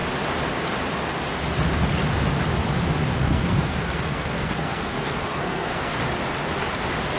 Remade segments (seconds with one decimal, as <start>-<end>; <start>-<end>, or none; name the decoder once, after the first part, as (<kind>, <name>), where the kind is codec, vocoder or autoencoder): 3.1-6.0 (codec, SNAC)